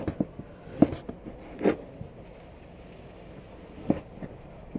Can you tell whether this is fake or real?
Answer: real